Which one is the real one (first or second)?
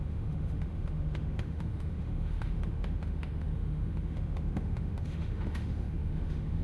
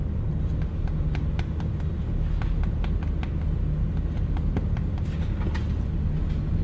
second